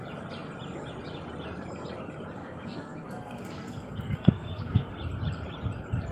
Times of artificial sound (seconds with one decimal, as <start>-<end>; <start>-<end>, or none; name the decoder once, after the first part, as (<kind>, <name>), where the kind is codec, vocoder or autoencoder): 2.4-4.9 (codec, SNAC)